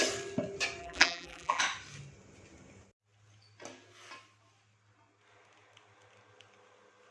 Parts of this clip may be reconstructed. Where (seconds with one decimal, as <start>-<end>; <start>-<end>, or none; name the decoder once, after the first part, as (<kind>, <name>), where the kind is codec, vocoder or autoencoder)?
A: 0.8-1.6 (vocoder, BigVGAN v2)